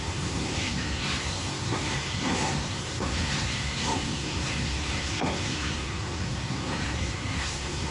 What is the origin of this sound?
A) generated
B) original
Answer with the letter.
A